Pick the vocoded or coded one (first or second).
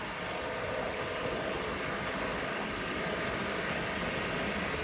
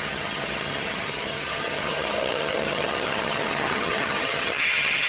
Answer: second